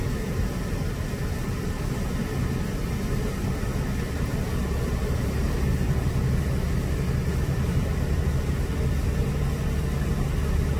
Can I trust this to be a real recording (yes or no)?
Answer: yes